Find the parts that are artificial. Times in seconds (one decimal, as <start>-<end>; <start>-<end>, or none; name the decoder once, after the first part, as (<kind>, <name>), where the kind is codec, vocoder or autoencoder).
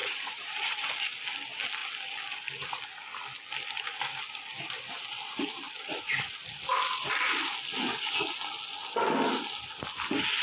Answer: 0.0-0.9 (vocoder, Vocos)